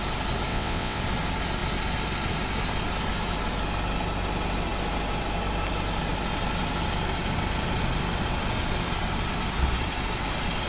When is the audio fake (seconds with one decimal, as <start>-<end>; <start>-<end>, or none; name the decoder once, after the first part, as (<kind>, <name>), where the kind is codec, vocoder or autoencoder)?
0.5-1.0 (vocoder, WaveNeXt)